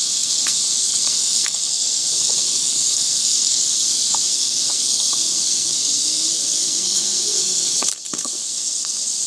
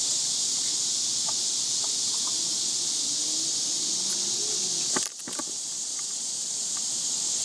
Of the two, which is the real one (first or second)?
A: second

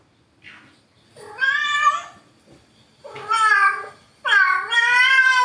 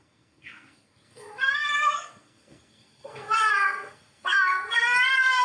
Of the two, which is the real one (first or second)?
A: first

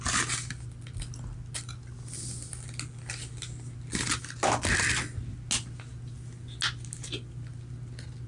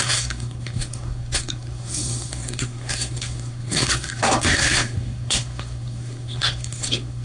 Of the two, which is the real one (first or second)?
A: first